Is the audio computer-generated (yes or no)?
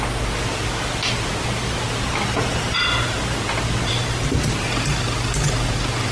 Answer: no